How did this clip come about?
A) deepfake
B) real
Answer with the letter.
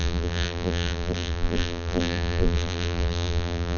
A